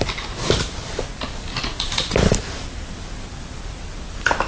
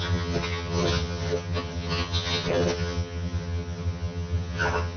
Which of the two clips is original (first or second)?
first